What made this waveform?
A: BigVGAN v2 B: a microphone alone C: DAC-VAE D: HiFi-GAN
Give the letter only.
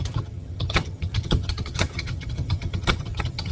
D